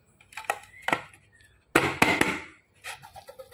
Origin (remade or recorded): recorded